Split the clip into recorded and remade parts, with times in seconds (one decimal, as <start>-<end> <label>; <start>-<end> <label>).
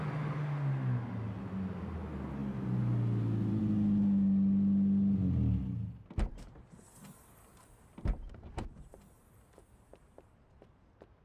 0.0-7.5 recorded; 7.5-8.9 remade; 8.9-11.2 recorded